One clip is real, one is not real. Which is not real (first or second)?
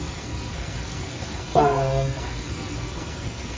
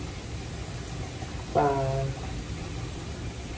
first